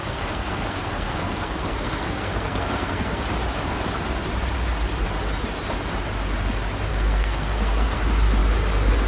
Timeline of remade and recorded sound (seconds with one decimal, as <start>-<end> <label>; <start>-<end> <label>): 0.0-3.2 remade; 3.2-6.9 recorded; 6.9-8.0 remade; 8.0-9.1 recorded